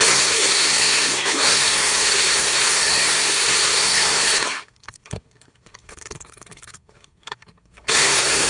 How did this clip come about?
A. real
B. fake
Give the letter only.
B